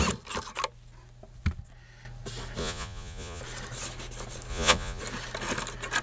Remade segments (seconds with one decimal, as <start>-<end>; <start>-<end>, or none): 2.6-3.4; 4.5-5.0